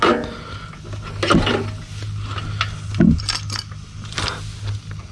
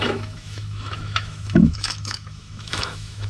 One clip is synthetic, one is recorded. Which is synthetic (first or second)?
second